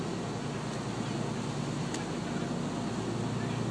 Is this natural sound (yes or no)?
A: yes